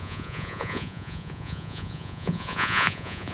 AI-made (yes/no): yes